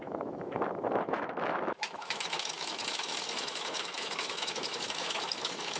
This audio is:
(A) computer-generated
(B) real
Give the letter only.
A